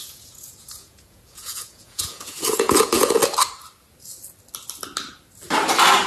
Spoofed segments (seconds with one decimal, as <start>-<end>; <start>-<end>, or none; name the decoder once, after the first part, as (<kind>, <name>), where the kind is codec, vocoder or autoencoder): 0.0-3.2 (vocoder, Vocos)